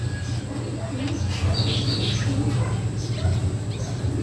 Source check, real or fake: real